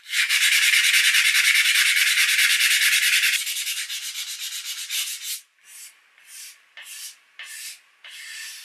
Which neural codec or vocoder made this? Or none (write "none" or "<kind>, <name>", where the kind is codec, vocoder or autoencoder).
none